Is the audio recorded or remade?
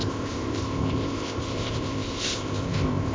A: remade